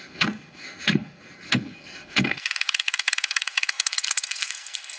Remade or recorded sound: remade